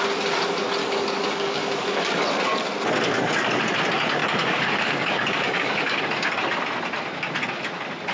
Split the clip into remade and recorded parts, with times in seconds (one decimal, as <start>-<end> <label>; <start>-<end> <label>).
0.0-0.8 recorded; 0.8-2.2 remade; 2.2-4.2 recorded; 4.2-6.0 remade; 6.0-8.1 recorded